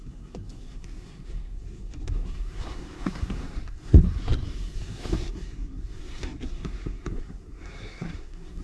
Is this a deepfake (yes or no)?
yes